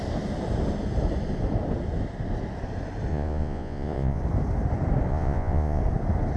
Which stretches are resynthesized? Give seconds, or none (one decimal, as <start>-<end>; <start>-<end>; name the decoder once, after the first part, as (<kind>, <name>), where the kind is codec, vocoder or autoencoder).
3.1-4.2 (vocoder, Vocos); 5.1-5.8